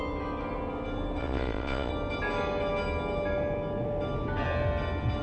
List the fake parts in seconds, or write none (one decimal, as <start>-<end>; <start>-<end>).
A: 1.2-1.9